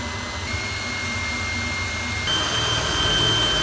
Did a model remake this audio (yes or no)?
no